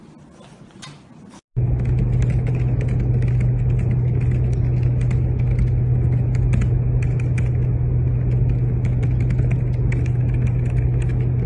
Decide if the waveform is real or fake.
real